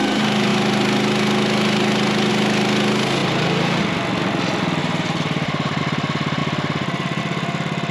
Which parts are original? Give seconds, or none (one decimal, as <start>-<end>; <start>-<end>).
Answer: 0.0-3.2; 3.8-4.8; 5.8-7.9